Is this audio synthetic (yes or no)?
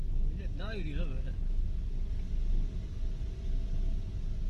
no